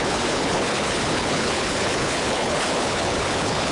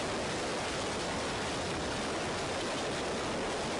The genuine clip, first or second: second